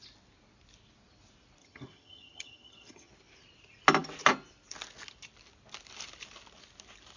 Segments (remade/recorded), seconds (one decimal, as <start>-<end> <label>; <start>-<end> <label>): 0.0-1.6 recorded; 1.6-3.1 remade; 3.1-7.2 recorded